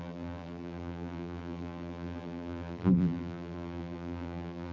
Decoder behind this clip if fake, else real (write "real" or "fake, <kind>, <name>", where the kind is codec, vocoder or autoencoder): fake, vocoder, BigVGAN v2